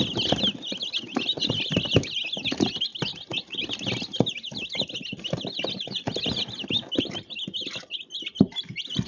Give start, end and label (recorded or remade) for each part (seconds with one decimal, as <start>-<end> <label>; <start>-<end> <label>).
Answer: 0.0-9.1 recorded